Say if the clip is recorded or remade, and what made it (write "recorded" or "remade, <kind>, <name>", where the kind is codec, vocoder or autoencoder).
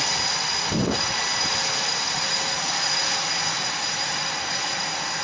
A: recorded